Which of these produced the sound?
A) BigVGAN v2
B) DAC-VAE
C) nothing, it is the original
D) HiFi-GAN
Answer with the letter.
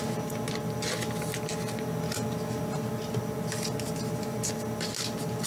C